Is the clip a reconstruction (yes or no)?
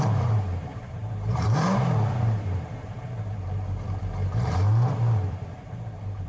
yes